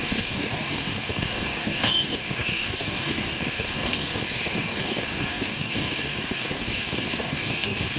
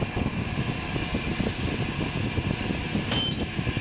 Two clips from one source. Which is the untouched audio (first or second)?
second